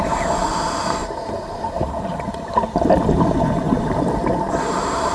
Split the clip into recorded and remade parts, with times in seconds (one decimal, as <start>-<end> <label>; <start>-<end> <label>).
0.0-1.0 recorded; 1.0-4.1 remade; 4.1-5.1 recorded